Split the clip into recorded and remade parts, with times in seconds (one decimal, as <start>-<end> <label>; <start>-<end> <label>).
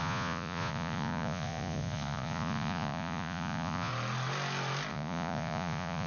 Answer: 0.0-3.9 remade; 3.9-4.9 recorded; 4.9-6.1 remade